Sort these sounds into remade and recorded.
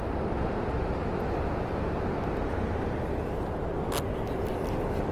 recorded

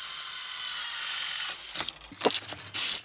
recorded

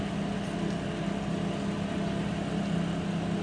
recorded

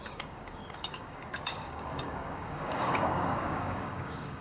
remade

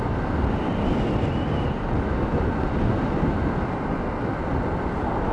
recorded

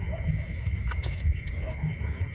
remade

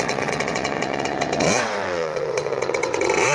remade